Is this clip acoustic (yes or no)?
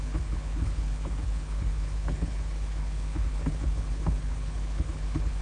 no